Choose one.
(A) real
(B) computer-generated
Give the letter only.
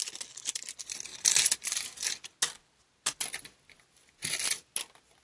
A